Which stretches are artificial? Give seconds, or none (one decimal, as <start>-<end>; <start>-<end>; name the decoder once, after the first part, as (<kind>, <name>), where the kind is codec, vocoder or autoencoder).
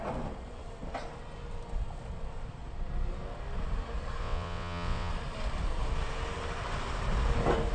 4.2-5.1 (vocoder, WaveNeXt)